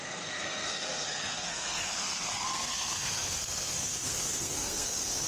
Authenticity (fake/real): fake